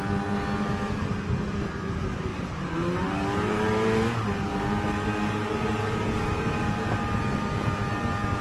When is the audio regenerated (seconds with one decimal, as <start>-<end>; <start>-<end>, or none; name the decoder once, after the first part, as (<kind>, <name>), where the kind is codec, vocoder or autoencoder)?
2.3-7.2 (vocoder, BigVGAN v2)